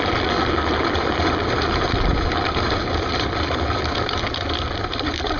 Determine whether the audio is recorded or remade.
recorded